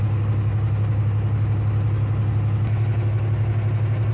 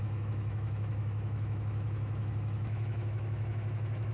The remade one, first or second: second